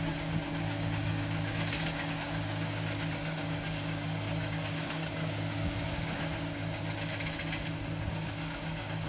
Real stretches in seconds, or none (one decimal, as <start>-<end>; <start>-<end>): 6.6-8.0